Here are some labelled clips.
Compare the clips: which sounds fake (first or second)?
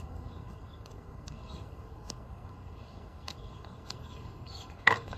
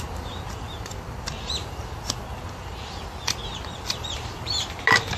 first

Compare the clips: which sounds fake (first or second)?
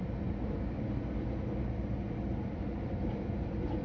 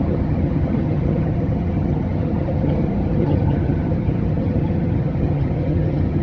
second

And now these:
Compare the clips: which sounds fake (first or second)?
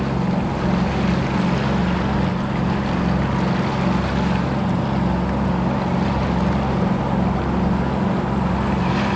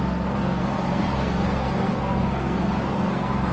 second